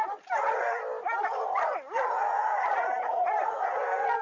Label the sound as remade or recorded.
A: recorded